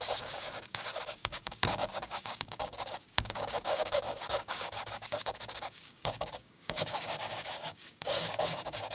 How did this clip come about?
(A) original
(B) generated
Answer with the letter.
B